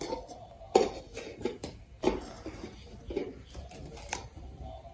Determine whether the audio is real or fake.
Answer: real